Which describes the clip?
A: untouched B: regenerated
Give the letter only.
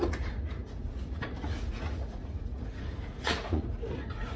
B